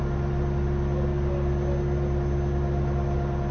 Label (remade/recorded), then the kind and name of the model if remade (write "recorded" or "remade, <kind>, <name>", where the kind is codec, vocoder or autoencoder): recorded